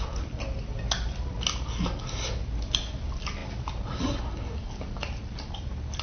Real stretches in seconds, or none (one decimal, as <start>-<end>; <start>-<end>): 0.0-6.0